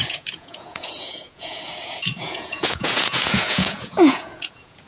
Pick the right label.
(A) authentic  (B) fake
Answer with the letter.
B